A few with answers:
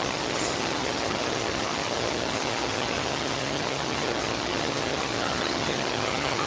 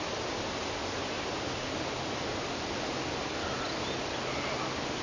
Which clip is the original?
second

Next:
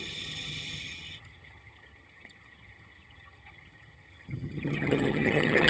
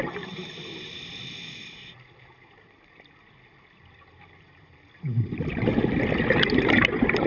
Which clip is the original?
second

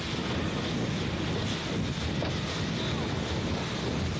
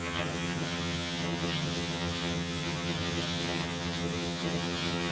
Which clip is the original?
first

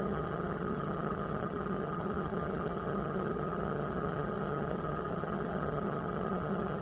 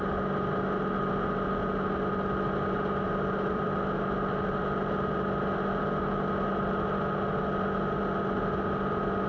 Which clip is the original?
second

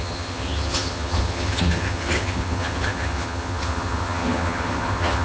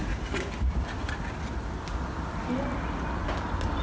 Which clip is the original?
second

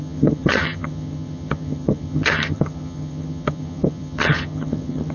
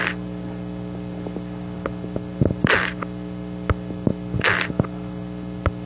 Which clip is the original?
second